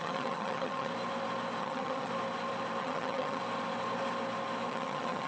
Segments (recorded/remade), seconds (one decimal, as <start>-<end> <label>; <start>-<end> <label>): 0.0-0.9 remade; 0.9-1.6 recorded; 1.6-2.1 remade; 2.1-2.8 recorded; 2.8-3.4 remade; 3.4-4.7 recorded; 4.7-5.3 remade